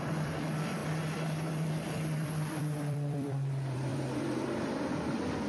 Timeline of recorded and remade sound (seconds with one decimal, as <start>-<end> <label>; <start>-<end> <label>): 0.0-5.5 remade